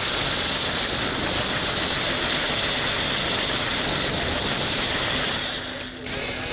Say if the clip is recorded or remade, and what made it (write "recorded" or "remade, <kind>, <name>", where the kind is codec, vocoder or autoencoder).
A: recorded